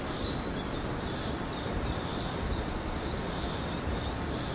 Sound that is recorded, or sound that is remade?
recorded